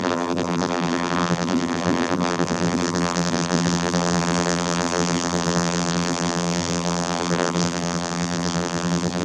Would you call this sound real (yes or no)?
no